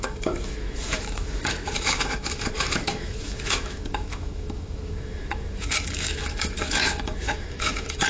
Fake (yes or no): yes